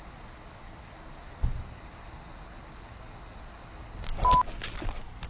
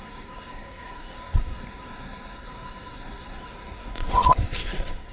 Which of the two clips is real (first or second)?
first